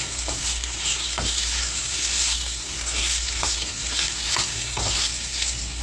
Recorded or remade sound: remade